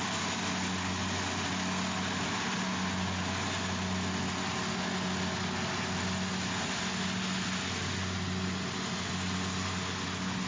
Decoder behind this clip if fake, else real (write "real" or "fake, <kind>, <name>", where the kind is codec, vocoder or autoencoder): real